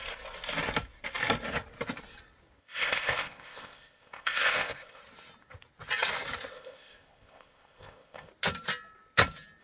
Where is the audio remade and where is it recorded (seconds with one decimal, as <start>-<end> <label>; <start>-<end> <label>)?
0.0-2.6 recorded; 2.6-5.0 remade; 5.0-6.5 recorded; 6.5-8.3 remade; 8.3-9.6 recorded